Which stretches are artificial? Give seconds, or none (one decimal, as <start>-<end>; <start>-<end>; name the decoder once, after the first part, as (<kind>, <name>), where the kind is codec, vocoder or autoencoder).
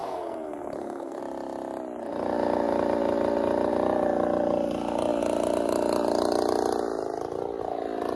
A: 0.0-1.2 (codec, SNAC)